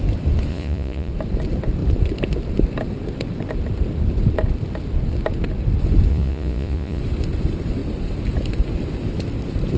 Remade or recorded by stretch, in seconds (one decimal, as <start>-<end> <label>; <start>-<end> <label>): 0.0-0.5 recorded; 0.5-1.1 remade; 1.1-6.1 recorded; 6.1-7.0 remade; 7.0-9.8 recorded